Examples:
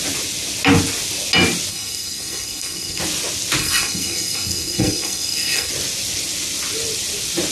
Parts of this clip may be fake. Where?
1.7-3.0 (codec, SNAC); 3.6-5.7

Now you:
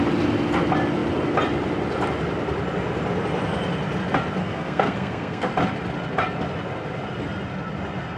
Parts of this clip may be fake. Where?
4.4-5.5 (codec, SNAC)

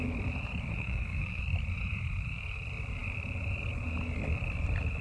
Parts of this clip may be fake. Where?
0.7-1.4 (codec, SNAC)

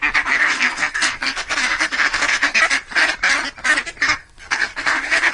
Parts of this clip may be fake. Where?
0.4-2.6 (codec, SNAC); 4.2-5.3